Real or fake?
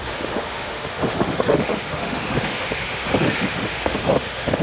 fake